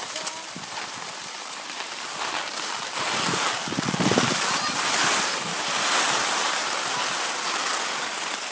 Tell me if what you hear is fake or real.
real